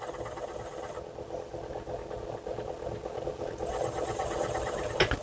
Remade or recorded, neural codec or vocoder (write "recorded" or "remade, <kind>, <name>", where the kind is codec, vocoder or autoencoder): recorded